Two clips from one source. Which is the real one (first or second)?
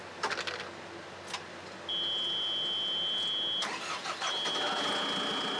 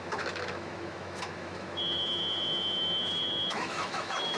first